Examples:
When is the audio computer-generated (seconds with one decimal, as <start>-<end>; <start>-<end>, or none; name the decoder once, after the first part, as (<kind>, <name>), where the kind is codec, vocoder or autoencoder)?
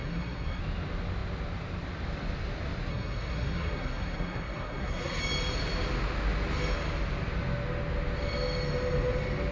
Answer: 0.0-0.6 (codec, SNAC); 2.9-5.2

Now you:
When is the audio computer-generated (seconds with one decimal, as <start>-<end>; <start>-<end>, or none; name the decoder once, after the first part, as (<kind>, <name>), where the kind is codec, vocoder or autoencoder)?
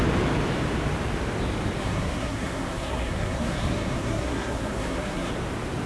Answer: 1.8-5.3 (codec, SNAC)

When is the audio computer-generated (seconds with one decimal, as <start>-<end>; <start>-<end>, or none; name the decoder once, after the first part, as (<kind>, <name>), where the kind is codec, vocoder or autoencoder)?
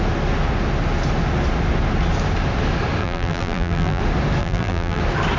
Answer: 3.0-4.0 (vocoder, BigVGAN v2); 4.4-5.0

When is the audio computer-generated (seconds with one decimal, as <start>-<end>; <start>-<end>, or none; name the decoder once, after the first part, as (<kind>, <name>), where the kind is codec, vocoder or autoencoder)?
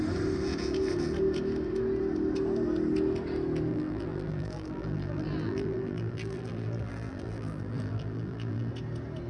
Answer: 3.7-8.7 (vocoder, BigVGAN v2)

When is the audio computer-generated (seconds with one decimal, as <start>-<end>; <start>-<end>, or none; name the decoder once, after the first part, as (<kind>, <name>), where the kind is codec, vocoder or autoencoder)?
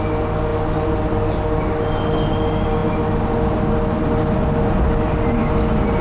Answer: none